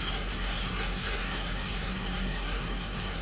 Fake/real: fake